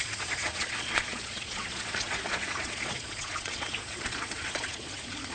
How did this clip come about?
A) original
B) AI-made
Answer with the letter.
B